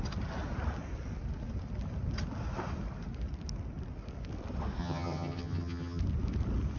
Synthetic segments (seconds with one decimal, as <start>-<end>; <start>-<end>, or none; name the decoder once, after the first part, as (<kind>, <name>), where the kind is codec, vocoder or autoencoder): 4.8-6.0 (vocoder, HiFi-GAN)